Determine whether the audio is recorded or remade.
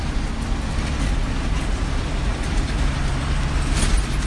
recorded